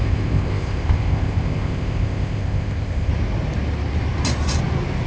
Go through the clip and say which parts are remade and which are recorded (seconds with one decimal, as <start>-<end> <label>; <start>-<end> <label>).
0.0-3.1 remade; 3.1-5.1 recorded

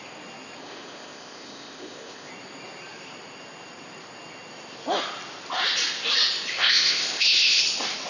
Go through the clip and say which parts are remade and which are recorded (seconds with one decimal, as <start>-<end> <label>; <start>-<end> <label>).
0.0-0.6 recorded; 0.6-2.3 remade; 2.3-6.5 recorded; 6.5-7.6 remade; 7.6-8.1 recorded

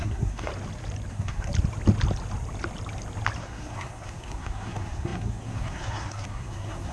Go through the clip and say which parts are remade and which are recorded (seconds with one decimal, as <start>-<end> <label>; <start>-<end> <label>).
0.0-0.5 remade; 0.5-1.1 recorded; 1.1-1.5 remade; 1.5-3.4 recorded; 3.4-6.9 remade

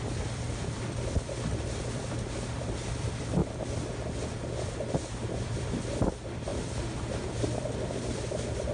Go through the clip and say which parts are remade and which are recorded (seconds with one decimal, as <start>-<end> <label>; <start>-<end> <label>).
0.0-3.4 remade; 3.4-5.4 recorded; 5.4-8.7 remade

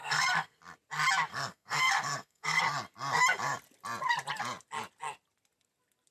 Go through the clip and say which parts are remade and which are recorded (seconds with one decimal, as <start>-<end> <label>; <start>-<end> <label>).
0.0-0.6 remade; 0.6-1.3 recorded; 1.3-2.6 remade; 2.6-6.1 recorded

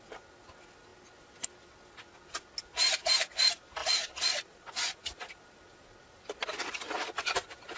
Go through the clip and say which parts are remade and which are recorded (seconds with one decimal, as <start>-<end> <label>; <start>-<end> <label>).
0.0-3.8 recorded; 3.8-5.3 remade; 5.3-7.8 recorded

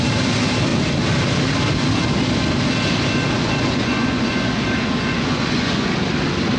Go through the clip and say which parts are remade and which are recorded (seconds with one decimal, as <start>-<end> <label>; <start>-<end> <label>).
0.0-3.4 recorded; 3.4-4.5 remade; 4.5-5.3 recorded; 5.3-5.9 remade; 5.9-6.6 recorded